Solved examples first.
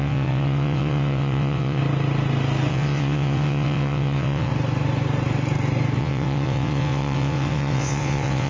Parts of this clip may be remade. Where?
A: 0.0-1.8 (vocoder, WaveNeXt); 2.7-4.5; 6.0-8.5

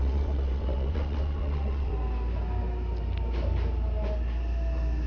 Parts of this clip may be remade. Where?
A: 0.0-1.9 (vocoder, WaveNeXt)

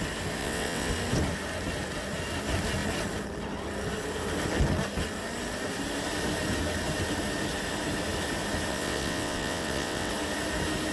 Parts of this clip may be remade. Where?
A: 0.4-0.9 (vocoder, WaveNeXt); 8.7-10.1

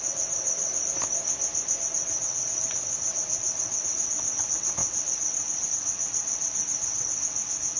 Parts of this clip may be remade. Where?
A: 0.0-0.7 (vocoder, WaveNeXt); 1.8-7.8

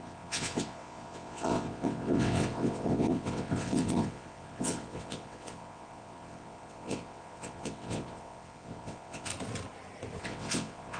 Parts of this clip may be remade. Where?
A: 0.0-9.3 (vocoder, WaveNeXt); 10.2-11.0

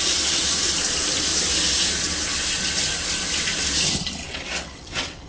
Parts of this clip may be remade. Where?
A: 4.2-5.3 (vocoder, WaveNeXt)

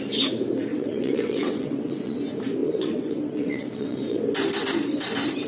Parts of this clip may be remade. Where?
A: 0.7-2.2 (vocoder, WaveNeXt); 2.6-4.2